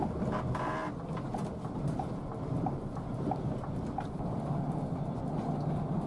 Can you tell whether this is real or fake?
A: real